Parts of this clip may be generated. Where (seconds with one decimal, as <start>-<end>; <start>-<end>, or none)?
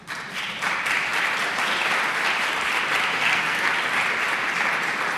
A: 3.0-3.7